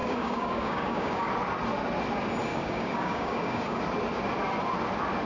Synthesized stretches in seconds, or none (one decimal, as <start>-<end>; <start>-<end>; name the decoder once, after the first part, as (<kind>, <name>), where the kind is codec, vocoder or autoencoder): 0.0-1.3 (codec, DAC); 2.5-3.8